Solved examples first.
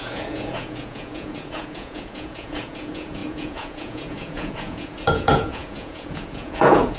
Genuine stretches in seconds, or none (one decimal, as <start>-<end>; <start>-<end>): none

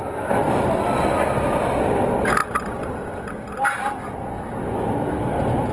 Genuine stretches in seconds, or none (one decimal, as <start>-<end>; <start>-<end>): 0.0-5.7

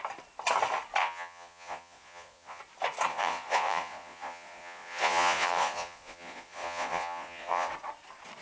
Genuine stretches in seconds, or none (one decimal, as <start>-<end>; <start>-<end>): 0.0-1.0; 2.6-3.1; 7.7-8.4

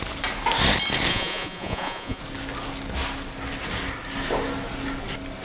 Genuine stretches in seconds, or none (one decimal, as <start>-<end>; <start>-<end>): 0.0-1.1; 2.2-5.4

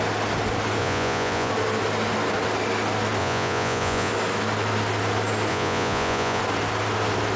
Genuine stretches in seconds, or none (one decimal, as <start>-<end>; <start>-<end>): 0.0-0.8; 1.5-3.2; 4.1-5.5; 6.4-7.4